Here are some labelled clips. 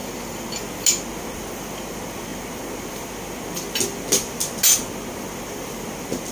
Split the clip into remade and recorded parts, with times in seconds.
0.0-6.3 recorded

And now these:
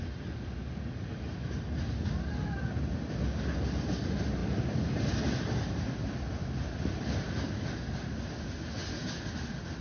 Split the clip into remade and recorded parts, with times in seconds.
0.0-9.8 recorded

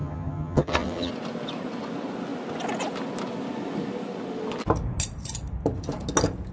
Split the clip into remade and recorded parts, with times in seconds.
0.0-1.1 remade; 1.1-6.5 recorded

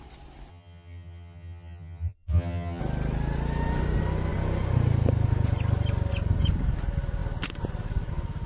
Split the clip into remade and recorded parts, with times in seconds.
0.0-0.5 recorded; 0.5-2.8 remade; 2.8-8.5 recorded

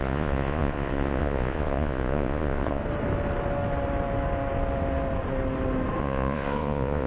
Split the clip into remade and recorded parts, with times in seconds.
0.0-2.8 remade; 2.8-6.0 recorded; 6.0-7.1 remade

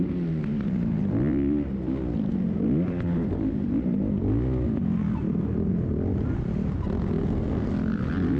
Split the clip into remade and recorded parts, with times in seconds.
0.0-7.2 recorded; 7.2-7.7 remade; 7.7-8.4 recorded